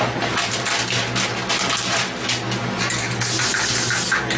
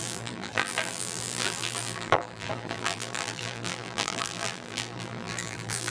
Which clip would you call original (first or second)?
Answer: first